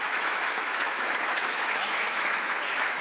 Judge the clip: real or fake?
fake